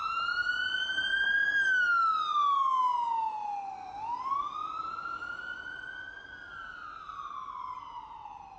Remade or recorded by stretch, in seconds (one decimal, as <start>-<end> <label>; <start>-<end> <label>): 0.0-8.6 recorded